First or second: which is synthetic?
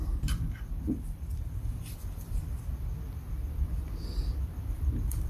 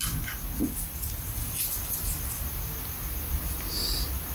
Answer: first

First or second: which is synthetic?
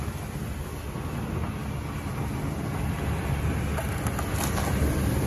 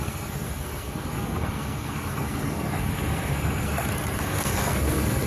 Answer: second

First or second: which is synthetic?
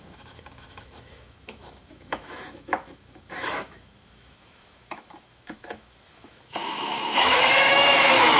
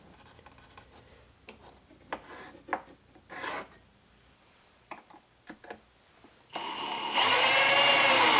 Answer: first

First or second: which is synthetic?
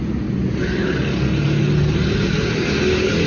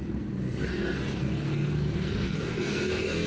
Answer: second